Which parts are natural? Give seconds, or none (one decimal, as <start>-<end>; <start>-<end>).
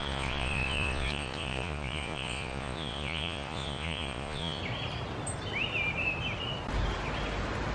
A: 4.6-7.7